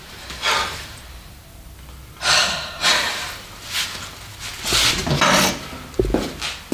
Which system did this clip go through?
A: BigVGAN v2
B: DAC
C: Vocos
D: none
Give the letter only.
D